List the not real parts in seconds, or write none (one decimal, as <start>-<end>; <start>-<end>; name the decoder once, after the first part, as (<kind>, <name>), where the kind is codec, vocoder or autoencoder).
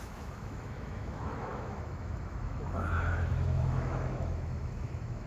0.0-5.3 (autoencoder, DAC-VAE)